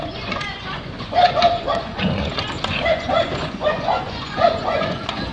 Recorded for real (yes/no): no